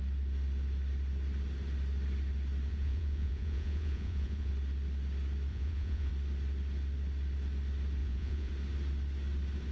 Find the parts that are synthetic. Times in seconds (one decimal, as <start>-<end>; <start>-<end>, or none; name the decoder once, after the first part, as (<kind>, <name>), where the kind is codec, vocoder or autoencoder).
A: 2.7-4.5 (vocoder, Vocos); 5.5-6.1; 8.0-8.5